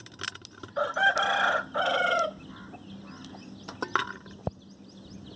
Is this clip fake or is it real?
real